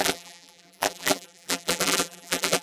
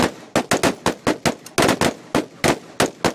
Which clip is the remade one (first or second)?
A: first